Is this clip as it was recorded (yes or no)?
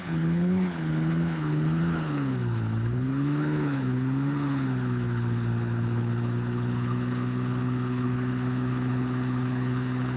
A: no